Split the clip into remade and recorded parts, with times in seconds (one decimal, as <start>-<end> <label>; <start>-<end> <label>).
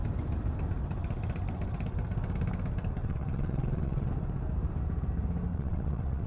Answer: 0.0-3.0 recorded; 3.0-4.1 remade; 4.1-5.5 recorded; 5.5-6.3 remade